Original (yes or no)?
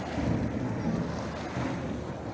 yes